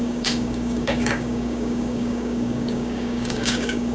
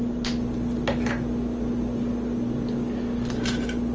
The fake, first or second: first